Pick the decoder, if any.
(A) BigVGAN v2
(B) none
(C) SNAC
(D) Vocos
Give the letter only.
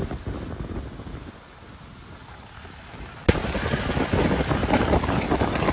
B